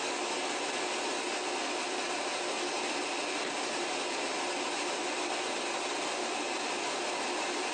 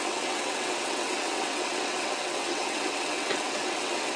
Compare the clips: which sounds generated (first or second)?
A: second